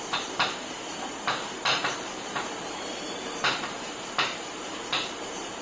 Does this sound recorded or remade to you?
remade